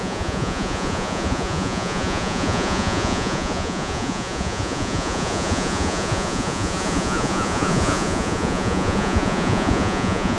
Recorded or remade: remade